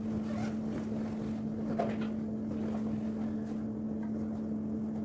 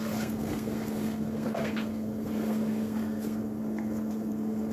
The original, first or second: first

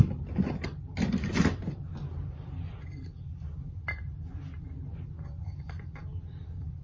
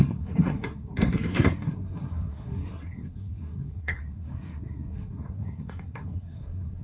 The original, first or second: first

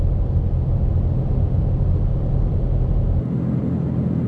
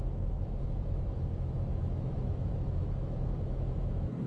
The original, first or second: first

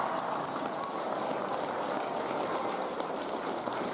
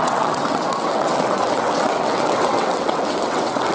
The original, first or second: first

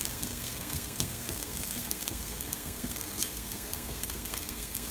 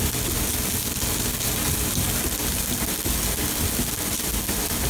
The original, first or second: second